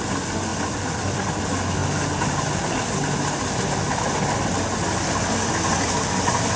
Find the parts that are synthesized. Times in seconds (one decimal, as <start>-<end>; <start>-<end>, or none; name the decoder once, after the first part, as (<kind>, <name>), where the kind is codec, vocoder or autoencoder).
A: 0.5-1.4 (vocoder, BigVGAN v2)